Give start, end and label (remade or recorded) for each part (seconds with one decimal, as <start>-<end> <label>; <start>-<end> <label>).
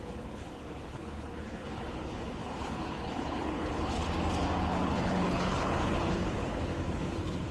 0.0-4.0 remade; 4.0-4.6 recorded; 4.6-7.5 remade